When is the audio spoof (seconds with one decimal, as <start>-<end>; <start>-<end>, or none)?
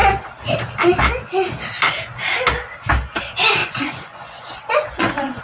3.6-5.4